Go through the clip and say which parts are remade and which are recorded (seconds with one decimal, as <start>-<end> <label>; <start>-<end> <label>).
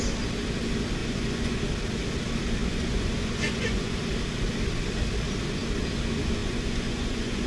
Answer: 0.0-1.0 recorded; 1.0-1.6 remade; 1.6-2.7 recorded; 2.7-4.0 remade; 4.0-6.4 recorded; 6.4-7.5 remade